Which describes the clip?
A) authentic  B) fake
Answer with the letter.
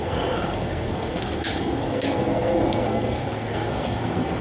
B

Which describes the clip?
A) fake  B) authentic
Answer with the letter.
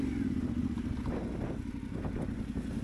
B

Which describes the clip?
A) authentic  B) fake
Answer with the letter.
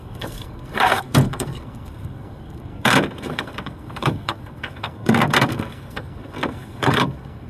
B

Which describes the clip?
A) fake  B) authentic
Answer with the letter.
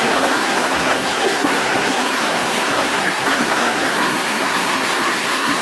A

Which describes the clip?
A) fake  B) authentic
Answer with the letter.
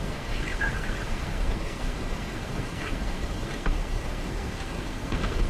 A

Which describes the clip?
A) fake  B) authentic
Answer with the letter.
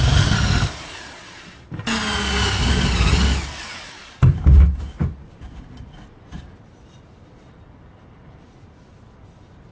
B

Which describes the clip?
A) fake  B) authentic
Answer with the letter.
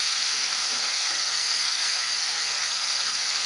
A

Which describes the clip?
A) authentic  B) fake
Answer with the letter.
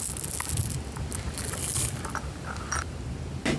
A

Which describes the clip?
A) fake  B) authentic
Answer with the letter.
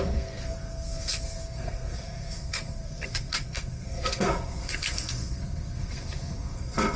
A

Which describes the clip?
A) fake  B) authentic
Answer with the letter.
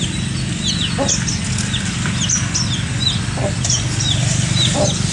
B